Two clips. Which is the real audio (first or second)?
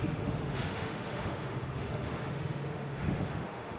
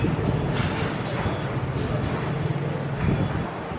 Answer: second